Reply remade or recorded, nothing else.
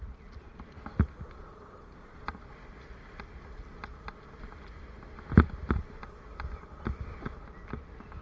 recorded